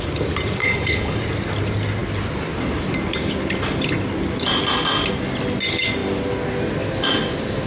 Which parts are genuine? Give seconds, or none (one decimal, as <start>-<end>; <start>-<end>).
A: 0.0-0.6; 1.2-7.7